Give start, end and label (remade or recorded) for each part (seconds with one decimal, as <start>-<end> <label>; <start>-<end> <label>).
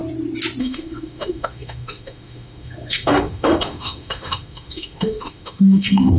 0.0-0.6 recorded; 0.6-6.2 remade